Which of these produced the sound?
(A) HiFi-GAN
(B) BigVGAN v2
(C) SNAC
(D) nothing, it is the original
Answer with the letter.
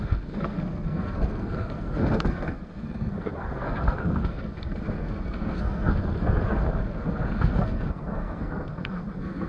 C